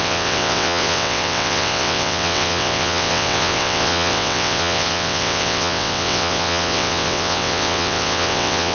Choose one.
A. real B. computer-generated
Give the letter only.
B